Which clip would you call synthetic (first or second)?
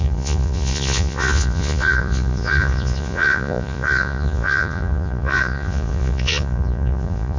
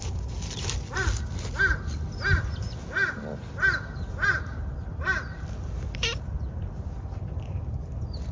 first